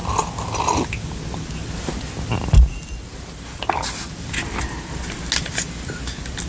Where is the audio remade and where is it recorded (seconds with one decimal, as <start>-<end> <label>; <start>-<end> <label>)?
0.0-6.5 recorded